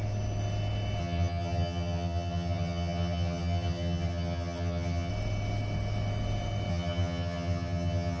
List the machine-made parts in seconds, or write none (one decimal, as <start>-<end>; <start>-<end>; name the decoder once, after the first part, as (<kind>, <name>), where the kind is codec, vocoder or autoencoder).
1.0-5.1 (vocoder, HiFi-GAN); 6.7-8.2